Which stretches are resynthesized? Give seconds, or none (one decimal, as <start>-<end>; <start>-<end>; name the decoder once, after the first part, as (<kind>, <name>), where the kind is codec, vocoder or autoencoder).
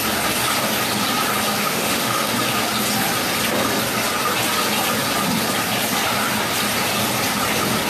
1.6-2.3 (autoencoder, DAC-VAE)